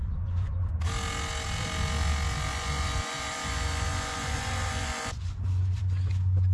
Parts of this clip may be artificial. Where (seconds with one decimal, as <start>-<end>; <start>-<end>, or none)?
0.0-0.7; 2.5-5.8